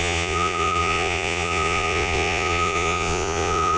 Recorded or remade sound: remade